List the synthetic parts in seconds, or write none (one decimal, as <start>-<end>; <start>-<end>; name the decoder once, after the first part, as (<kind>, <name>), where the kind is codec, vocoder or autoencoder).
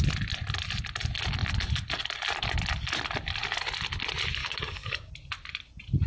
4.4-5.1 (codec, DAC)